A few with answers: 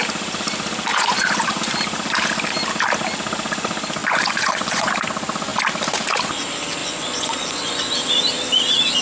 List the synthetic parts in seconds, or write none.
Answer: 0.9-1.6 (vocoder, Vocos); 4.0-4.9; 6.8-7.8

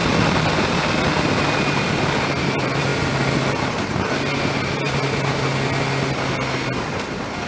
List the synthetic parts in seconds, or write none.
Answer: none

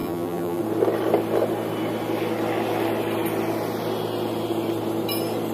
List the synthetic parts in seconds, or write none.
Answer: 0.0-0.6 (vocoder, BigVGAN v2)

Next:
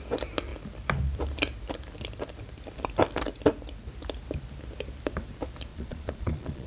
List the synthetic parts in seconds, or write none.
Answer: 5.7-6.7 (vocoder, Vocos)

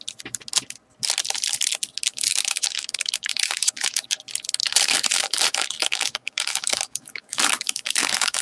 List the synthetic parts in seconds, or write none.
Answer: 2.1-4.1 (codec, DAC); 4.6-8.4

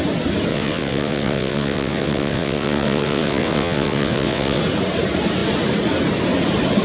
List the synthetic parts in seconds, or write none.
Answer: 0.5-4.6 (vocoder, WaveNeXt)

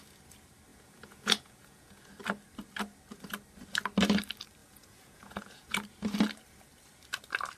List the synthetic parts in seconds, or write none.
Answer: 0.7-2.1 (vocoder, Vocos); 4.6-5.7